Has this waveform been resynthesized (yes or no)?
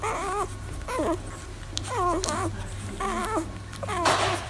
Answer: no